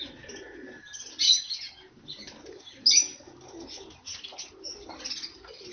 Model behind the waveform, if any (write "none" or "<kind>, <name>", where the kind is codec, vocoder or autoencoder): none